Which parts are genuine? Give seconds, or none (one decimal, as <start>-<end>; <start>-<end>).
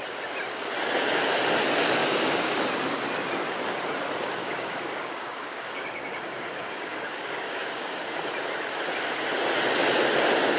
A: 0.0-2.0; 2.6-4.2; 7.9-10.6